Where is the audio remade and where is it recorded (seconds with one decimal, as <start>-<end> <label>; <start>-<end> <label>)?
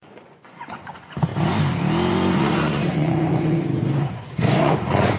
0.0-1.3 remade; 1.3-2.1 recorded; 2.1-5.2 remade